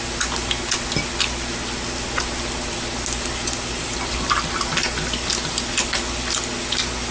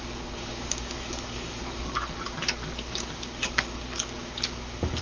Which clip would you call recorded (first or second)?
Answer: first